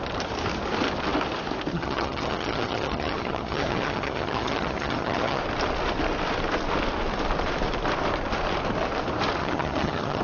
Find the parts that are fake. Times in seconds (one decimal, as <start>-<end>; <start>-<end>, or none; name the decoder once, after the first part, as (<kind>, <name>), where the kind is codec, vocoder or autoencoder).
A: 1.7-5.4 (vocoder, HiFi-GAN); 9.4-10.2